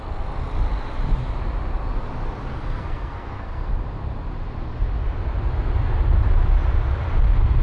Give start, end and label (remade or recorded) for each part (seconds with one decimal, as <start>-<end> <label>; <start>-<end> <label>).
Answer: 0.0-2.5 recorded; 2.5-3.7 remade; 3.7-7.6 recorded